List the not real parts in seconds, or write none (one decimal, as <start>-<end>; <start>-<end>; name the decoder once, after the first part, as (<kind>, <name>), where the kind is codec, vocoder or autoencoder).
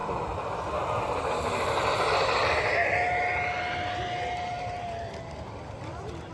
none